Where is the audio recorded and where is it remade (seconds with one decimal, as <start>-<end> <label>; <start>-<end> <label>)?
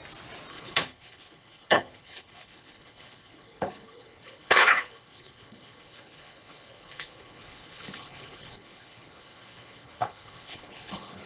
0.0-0.5 recorded; 0.5-11.3 remade